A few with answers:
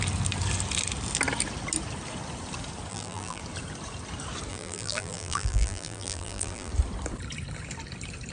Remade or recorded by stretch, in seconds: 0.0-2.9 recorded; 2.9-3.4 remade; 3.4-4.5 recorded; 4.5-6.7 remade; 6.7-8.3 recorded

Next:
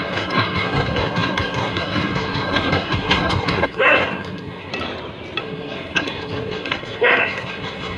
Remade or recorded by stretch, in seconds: 0.0-4.7 remade; 4.7-5.4 recorded; 5.4-8.0 remade

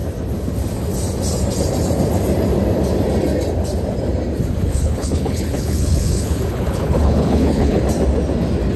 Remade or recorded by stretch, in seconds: 0.0-4.6 recorded; 4.6-7.8 remade; 7.8-8.8 recorded

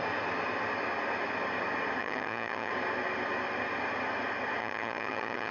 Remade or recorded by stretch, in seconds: 0.0-2.0 recorded; 2.0-2.7 remade; 2.7-4.6 recorded; 4.6-5.5 remade

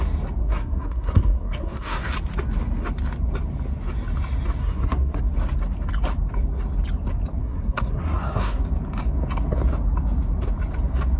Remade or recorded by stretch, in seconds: 0.0-0.4 recorded; 0.4-2.1 remade; 2.1-4.6 recorded; 4.6-5.2 remade; 5.2-7.4 recorded; 7.4-8.6 remade; 8.6-11.2 recorded

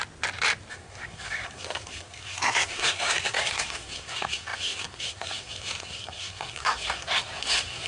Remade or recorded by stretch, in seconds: 0.0-0.7 recorded; 0.7-7.9 remade

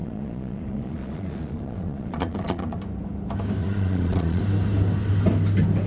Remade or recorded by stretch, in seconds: 0.0-2.8 remade; 2.8-3.6 recorded; 3.6-4.4 remade; 4.4-5.9 recorded